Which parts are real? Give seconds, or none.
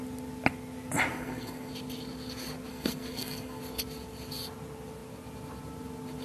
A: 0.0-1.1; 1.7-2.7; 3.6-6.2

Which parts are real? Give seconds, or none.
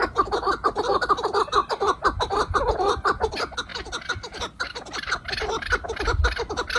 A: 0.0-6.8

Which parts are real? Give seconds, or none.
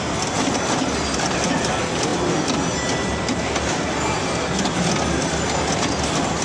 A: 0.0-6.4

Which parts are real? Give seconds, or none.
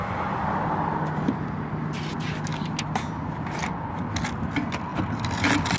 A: 0.0-5.8